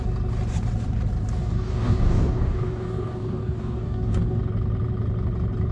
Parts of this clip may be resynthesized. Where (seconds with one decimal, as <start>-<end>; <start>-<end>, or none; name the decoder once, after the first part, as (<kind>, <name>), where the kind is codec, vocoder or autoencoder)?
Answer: 1.4-4.4 (codec, DAC)